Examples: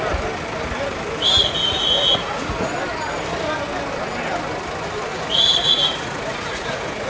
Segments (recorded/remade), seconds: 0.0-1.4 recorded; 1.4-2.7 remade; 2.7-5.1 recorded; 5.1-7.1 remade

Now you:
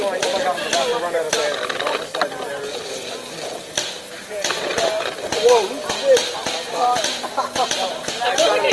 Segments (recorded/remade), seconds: 0.0-2.5 recorded; 2.5-3.1 remade; 3.1-8.7 recorded